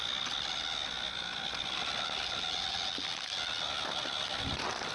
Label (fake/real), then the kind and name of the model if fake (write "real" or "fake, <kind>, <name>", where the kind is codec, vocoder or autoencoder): real